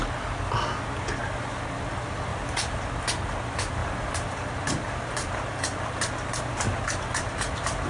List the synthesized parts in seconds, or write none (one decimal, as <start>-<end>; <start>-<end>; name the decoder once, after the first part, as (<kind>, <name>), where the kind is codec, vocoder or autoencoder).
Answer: 2.3-2.9 (vocoder, BigVGAN v2); 3.8-7.9